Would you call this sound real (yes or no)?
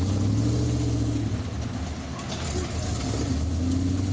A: yes